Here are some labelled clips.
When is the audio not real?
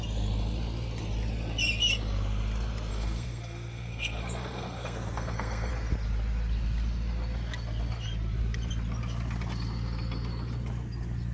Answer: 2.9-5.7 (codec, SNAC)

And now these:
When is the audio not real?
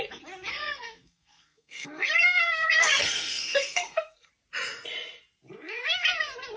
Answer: 0.5-4.3 (codec, SNAC)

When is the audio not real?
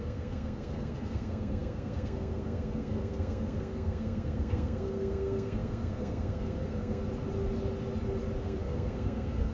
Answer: 0.0-7.0 (codec, SNAC); 8.4-9.5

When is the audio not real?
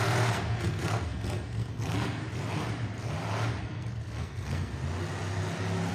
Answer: 0.0-2.2 (codec, SNAC); 3.6-4.8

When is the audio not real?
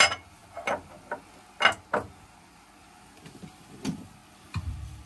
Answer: none